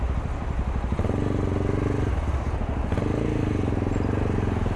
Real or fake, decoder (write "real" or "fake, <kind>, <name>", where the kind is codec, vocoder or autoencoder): real